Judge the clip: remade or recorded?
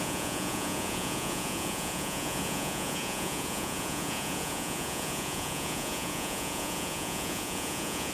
remade